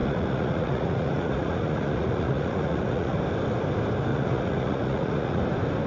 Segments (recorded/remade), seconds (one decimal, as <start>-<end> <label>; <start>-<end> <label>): 0.0-3.2 remade; 3.2-4.1 recorded; 4.1-5.4 remade; 5.4-5.9 recorded